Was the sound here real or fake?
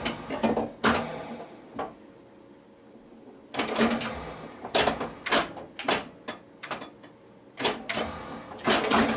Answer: real